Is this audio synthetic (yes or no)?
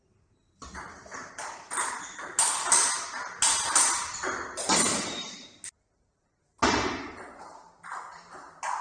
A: no